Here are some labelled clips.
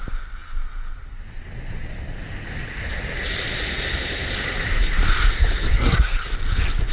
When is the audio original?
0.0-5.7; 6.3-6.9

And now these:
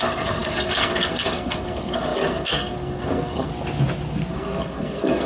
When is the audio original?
3.5-4.3